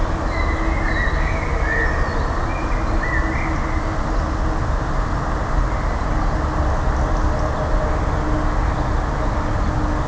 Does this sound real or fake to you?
real